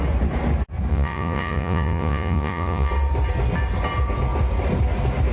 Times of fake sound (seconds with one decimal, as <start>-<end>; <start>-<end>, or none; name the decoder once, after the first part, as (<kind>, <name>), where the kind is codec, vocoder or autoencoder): 0.9-2.9 (vocoder, Vocos)